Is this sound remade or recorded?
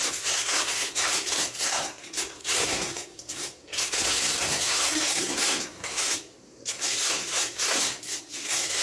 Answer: remade